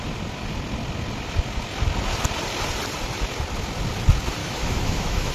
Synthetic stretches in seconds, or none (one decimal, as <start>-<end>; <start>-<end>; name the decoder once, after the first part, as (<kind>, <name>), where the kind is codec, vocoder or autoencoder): 4.4-5.3 (autoencoder, DAC-VAE)